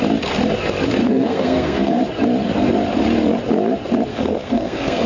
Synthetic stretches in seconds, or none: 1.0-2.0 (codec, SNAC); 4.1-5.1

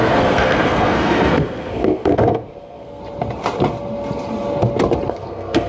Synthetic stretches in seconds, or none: 0.0-3.0 (codec, SNAC); 5.1-5.7

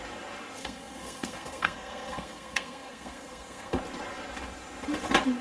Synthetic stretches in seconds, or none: 0.6-3.8 (codec, SNAC)